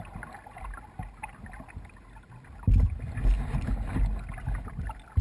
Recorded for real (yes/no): yes